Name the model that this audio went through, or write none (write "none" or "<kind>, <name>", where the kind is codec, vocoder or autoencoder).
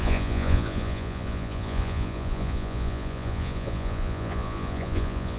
vocoder, Vocos